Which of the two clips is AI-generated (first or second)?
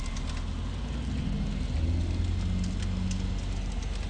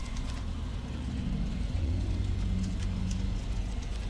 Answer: second